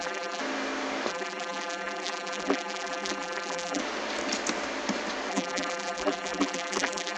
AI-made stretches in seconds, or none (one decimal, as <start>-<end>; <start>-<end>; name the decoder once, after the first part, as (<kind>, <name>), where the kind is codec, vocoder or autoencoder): 0.0-0.4 (vocoder, BigVGAN v2); 1.1-3.8; 5.3-7.2